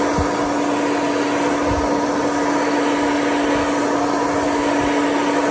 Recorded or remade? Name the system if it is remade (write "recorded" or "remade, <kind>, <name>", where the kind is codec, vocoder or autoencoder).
recorded